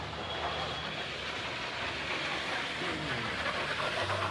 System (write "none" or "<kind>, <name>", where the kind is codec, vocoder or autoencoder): none